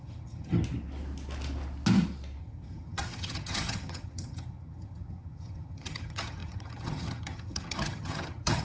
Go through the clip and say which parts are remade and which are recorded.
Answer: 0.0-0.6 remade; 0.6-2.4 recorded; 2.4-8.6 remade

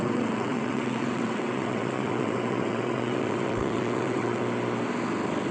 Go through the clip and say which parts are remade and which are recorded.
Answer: 0.0-4.4 remade; 4.4-5.5 recorded

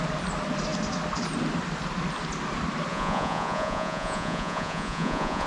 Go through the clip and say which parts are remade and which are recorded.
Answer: 0.0-2.9 recorded; 2.9-5.5 remade

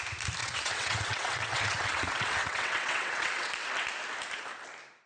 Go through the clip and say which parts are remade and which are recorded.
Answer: 0.0-0.4 recorded; 0.4-3.5 remade; 3.5-5.1 recorded

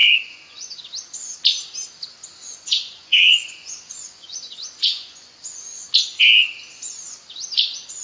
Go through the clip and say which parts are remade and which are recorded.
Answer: 0.0-0.8 remade; 0.8-2.4 recorded; 2.4-5.9 remade; 5.9-8.0 recorded

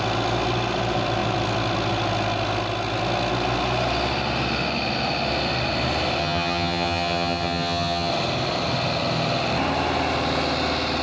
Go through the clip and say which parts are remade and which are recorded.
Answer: 0.0-6.2 recorded; 6.2-8.1 remade; 8.1-11.0 recorded

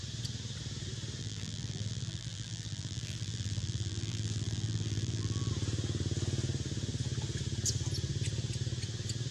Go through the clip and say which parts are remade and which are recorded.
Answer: 0.0-1.2 recorded; 1.2-5.5 remade; 5.5-9.3 recorded

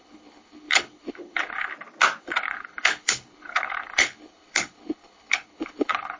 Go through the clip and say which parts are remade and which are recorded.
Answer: 0.0-1.7 remade; 1.7-2.2 recorded; 2.2-6.2 remade